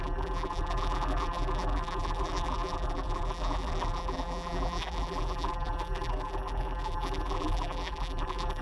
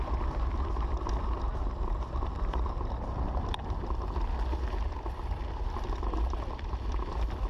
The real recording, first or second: second